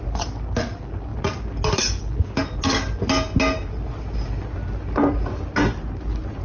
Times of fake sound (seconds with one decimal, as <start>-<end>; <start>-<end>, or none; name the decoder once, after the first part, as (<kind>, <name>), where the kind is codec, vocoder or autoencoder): none